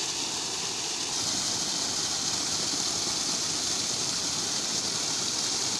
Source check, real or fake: real